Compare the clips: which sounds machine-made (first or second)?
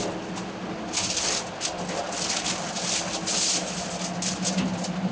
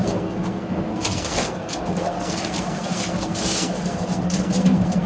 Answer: second